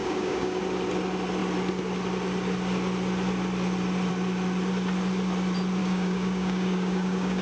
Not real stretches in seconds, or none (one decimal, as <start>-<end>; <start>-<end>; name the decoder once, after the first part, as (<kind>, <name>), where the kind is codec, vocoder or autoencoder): 0.0-0.6 (codec, DAC); 5.8-7.4